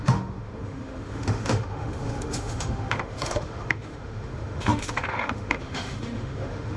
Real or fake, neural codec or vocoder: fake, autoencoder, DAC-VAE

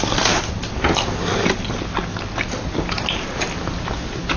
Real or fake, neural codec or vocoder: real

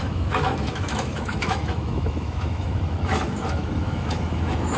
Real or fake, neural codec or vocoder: fake, autoencoder, DAC-VAE